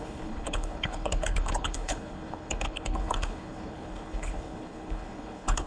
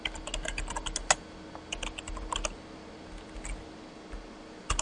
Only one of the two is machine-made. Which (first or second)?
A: first